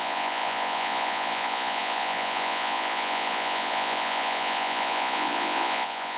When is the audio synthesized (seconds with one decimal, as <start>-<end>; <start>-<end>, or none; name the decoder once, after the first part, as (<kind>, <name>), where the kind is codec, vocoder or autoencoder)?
0.0-6.2 (vocoder, Vocos)